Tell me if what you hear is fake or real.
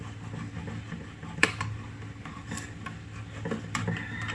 fake